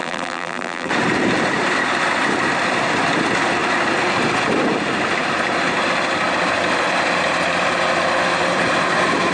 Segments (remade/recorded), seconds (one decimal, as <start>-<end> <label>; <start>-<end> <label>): 0.0-0.9 remade; 0.9-9.3 recorded

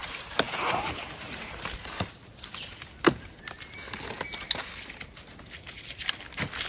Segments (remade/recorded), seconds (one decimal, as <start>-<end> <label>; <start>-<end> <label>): 0.0-2.1 remade; 2.1-6.7 recorded